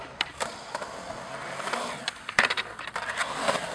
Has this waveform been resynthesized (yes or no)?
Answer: no